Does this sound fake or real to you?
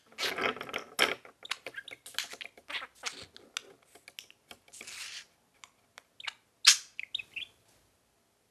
real